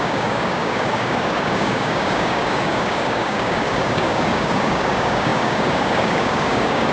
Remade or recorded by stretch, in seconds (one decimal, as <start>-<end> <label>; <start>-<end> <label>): 0.0-6.9 remade